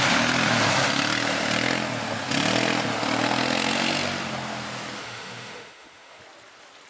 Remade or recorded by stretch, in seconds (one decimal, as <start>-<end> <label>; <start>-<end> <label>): 0.0-5.0 recorded; 5.0-6.2 remade; 6.2-6.9 recorded

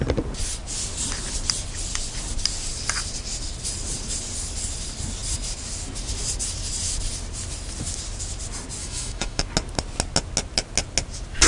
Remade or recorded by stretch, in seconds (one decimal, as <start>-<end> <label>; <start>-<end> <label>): 0.0-8.8 recorded; 8.8-9.4 remade; 9.4-11.5 recorded

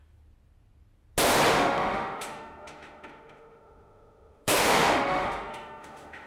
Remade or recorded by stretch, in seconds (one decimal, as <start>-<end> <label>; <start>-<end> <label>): 0.0-1.5 recorded; 1.5-6.3 remade

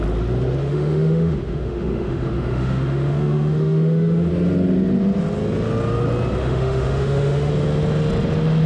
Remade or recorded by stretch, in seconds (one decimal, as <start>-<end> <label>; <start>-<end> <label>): 0.0-0.6 recorded; 0.6-4.3 remade; 4.3-6.4 recorded; 6.4-7.5 remade; 7.5-8.7 recorded

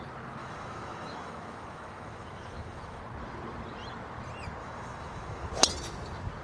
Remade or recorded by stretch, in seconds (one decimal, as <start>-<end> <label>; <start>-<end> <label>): 0.0-0.4 recorded; 0.4-3.0 remade; 3.0-4.6 recorded; 4.6-5.5 remade; 5.5-6.4 recorded

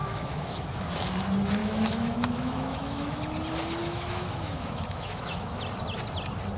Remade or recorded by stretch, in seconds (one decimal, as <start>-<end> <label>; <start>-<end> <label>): 0.0-0.8 remade; 0.8-1.6 recorded; 1.6-3.2 remade; 3.2-3.8 recorded; 3.8-5.6 remade; 5.6-6.6 recorded

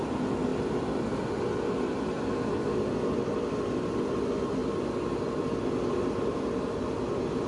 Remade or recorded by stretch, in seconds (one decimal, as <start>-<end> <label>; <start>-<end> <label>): 0.0-7.5 recorded

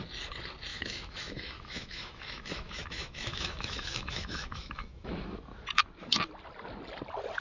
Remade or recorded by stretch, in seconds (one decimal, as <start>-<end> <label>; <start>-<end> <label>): 0.0-0.7 recorded; 0.7-5.1 remade; 5.1-7.4 recorded